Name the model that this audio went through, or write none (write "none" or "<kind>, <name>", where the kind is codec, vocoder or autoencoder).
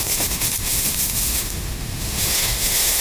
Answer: autoencoder, DAC-VAE